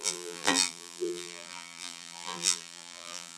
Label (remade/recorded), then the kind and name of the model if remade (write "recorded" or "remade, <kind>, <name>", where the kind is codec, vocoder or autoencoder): remade, vocoder, BigVGAN v2